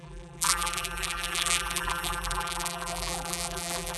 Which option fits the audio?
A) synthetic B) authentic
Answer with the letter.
A